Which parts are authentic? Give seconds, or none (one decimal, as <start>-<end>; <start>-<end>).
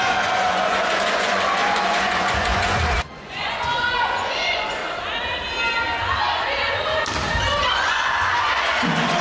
4.8-7.6